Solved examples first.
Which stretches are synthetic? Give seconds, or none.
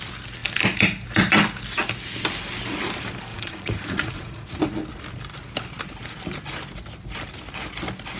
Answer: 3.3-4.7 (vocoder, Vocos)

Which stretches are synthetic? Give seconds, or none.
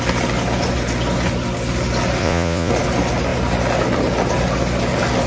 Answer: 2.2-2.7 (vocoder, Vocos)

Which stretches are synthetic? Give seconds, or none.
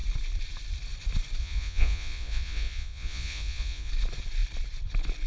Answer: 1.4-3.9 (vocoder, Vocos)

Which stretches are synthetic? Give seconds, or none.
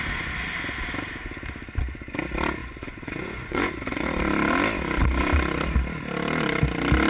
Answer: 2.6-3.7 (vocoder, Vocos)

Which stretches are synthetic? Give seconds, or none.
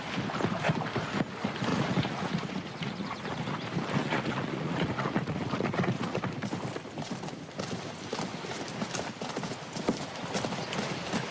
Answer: 1.7-3.5 (vocoder, Vocos); 4.0-6.2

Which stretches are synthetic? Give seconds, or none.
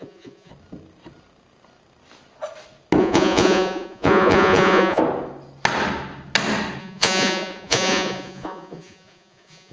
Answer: 0.0-0.5 (vocoder, Vocos); 3.0-5.0; 6.8-9.7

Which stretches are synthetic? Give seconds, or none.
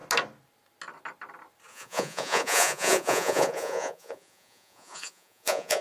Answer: 1.7-5.8 (vocoder, Vocos)